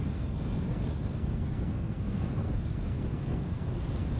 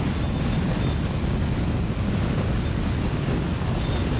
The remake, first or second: first